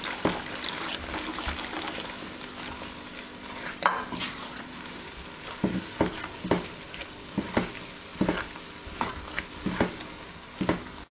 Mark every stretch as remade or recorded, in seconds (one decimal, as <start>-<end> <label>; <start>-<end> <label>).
0.0-4.2 recorded; 4.2-4.8 remade; 4.8-11.1 recorded